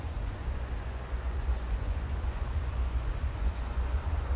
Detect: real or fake fake